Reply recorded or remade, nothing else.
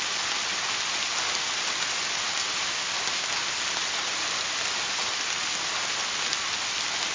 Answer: recorded